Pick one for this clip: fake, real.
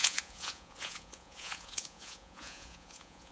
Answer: fake